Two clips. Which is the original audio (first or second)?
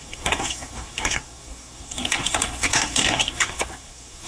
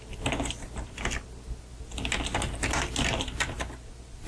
second